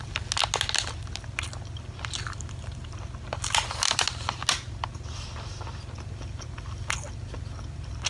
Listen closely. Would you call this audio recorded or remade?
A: recorded